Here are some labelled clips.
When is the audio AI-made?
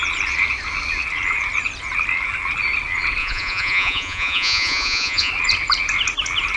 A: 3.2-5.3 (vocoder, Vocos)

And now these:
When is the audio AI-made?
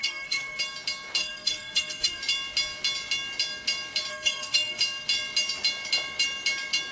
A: 0.0-0.6 (codec, SNAC); 1.2-2.2; 4.1-4.8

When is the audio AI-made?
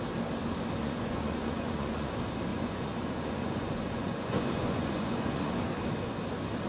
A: 0.8-2.1 (vocoder, Vocos); 2.5-5.5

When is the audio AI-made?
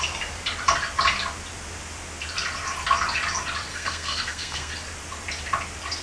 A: 3.7-4.7 (codec, SNAC)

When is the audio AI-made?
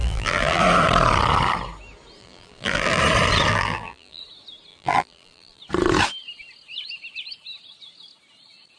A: 0.0-0.6 (vocoder, BigVGAN v2); 2.2-3.0; 3.5-4.2; 4.7-5.6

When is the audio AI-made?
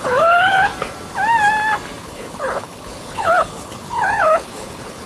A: 0.0-0.7 (codec, HILCodec); 2.0-5.1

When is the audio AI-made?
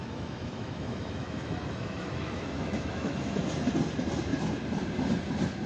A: 0.0-3.4 (autoencoder, DAC-VAE)